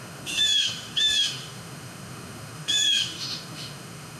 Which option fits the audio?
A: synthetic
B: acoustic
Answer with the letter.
A